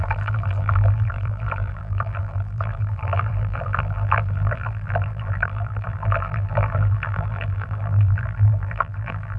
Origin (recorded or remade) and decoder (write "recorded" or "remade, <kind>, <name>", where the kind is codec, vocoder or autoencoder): remade, vocoder, BigVGAN v2